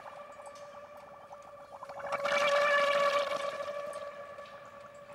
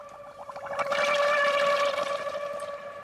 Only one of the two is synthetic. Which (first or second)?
second